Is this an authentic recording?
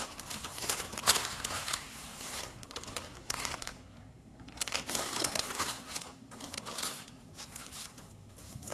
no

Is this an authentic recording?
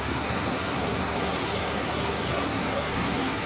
no